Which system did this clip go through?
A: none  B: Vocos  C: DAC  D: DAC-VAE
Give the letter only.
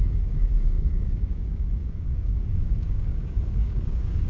C